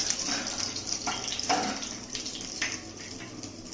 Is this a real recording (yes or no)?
yes